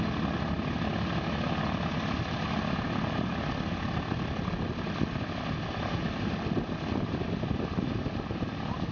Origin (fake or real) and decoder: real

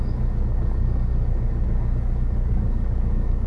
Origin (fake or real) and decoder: fake, codec, DAC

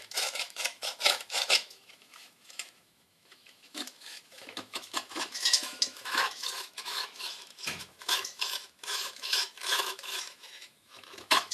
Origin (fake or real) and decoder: fake, autoencoder, DAC-VAE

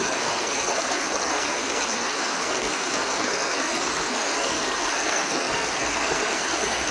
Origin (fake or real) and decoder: fake, codec, SNAC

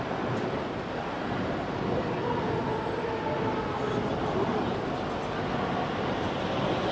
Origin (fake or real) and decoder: real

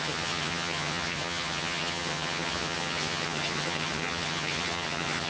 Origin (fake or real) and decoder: fake, vocoder, HiFi-GAN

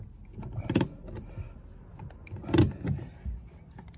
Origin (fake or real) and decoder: real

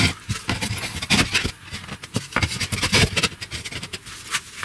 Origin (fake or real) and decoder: real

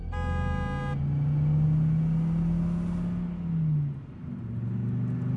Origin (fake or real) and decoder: real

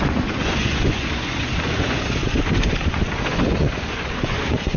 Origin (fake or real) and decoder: fake, vocoder, Vocos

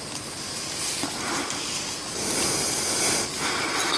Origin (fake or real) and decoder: real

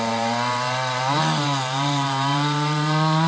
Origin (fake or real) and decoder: fake, vocoder, BigVGAN v2